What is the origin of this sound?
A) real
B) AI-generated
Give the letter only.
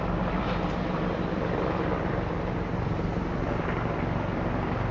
B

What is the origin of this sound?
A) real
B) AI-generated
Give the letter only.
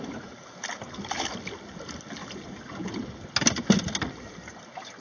A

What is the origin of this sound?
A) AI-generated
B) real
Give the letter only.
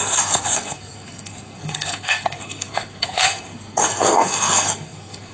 A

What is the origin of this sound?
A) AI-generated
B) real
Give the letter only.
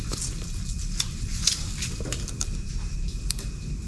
A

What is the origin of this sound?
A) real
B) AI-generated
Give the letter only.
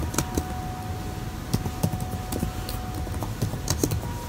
A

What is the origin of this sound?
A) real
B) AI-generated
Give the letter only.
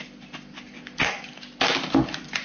A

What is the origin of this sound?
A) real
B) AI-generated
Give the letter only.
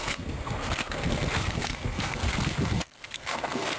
B